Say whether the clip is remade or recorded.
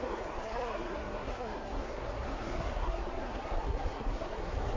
remade